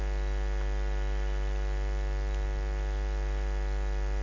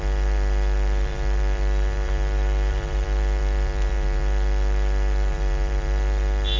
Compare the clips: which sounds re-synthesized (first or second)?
second